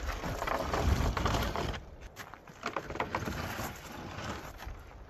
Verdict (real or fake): real